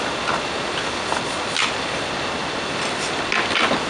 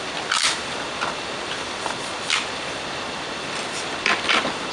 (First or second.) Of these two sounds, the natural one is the first